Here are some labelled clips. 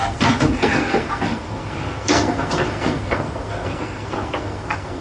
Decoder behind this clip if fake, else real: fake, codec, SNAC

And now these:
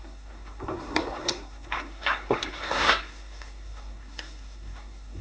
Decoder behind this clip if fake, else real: fake, codec, SNAC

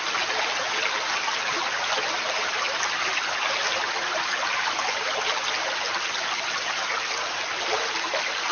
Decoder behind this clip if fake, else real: real